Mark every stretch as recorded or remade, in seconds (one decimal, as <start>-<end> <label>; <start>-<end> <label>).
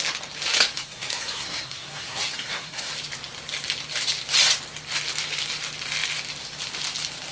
0.0-0.5 recorded; 0.5-2.9 remade; 2.9-7.3 recorded